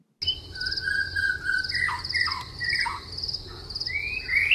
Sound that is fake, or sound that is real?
real